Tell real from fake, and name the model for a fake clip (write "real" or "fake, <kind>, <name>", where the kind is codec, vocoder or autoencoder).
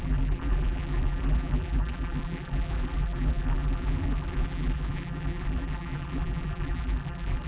fake, vocoder, BigVGAN v2